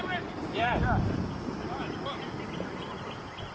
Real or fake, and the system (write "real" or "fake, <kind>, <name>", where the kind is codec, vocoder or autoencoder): fake, vocoder, BigVGAN v2